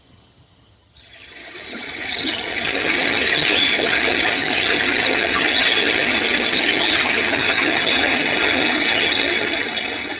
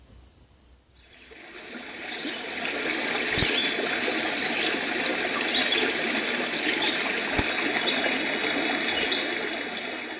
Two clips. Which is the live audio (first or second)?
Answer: second